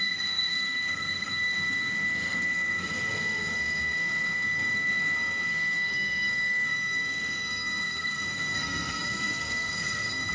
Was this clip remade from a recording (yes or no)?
yes